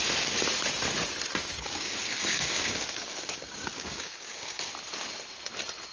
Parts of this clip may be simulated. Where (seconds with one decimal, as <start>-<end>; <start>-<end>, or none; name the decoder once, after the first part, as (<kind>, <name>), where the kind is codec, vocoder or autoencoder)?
1.4-4.7 (codec, DAC)